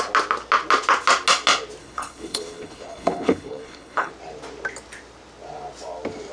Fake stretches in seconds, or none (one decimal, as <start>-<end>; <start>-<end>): 1.8-4.1